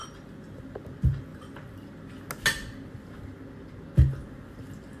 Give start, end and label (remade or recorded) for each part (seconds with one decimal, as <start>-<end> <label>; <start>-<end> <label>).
0.0-0.6 remade; 0.6-1.3 recorded; 1.3-2.1 remade; 2.1-5.0 recorded